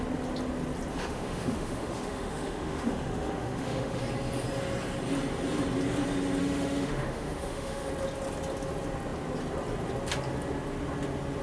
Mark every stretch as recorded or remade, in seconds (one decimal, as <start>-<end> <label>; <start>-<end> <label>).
0.0-0.9 recorded; 0.9-4.0 remade; 4.0-6.4 recorded; 6.4-7.9 remade; 7.9-11.4 recorded